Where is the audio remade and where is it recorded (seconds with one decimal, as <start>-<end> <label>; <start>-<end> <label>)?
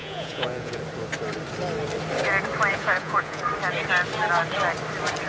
0.0-0.8 remade; 0.8-2.7 recorded; 2.7-3.4 remade; 3.4-5.3 recorded